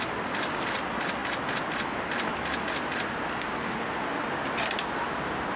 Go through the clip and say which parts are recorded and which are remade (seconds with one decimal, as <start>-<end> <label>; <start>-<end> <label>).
0.0-5.6 recorded